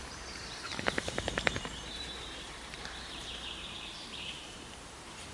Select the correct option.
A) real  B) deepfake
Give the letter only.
B